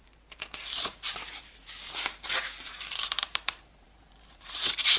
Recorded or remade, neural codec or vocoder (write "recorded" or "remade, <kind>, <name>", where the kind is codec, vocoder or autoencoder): remade, vocoder, BigVGAN v2